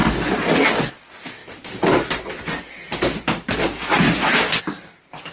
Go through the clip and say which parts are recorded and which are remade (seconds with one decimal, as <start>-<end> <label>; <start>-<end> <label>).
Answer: 0.0-5.3 recorded